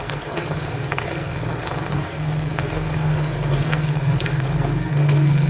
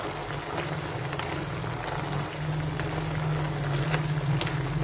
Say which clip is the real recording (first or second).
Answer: second